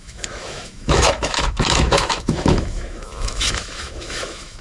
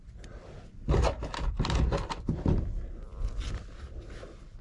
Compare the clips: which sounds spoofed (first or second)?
first